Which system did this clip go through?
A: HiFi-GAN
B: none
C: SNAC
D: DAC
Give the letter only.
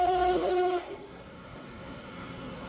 C